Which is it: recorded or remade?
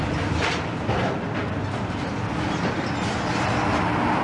recorded